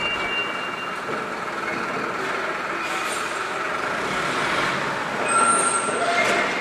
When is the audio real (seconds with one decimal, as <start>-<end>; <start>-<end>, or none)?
0.0-6.6